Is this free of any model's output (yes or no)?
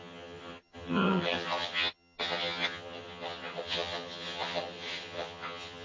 no